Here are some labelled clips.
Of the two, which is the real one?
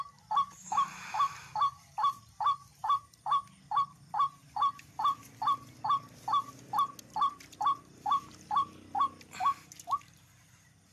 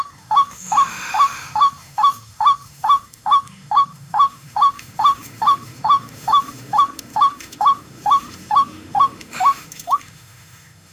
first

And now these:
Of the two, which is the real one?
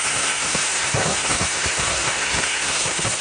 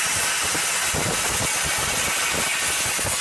second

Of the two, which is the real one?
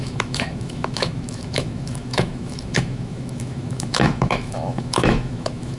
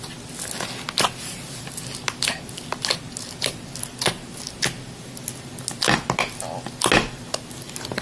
second